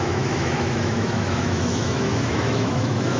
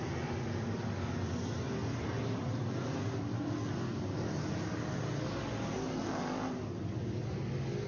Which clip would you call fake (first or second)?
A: first